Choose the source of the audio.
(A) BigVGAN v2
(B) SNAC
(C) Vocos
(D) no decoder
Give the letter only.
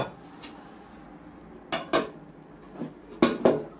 D